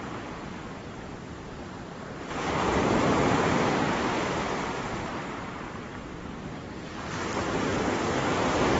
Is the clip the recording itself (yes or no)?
no